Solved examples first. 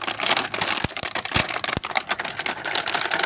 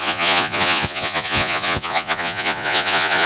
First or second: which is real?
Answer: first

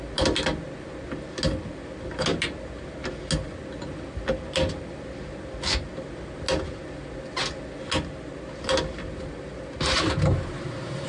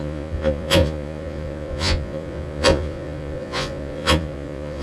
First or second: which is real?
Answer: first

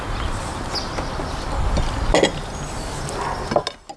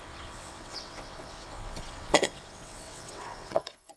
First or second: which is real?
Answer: first